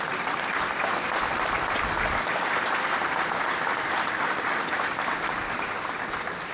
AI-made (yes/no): yes